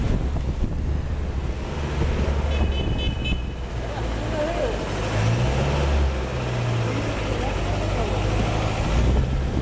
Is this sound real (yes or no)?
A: yes